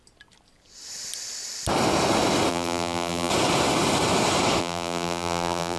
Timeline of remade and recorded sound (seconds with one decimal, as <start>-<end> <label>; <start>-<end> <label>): 0.0-2.5 recorded; 2.5-3.3 remade; 3.3-4.6 recorded; 4.6-5.8 remade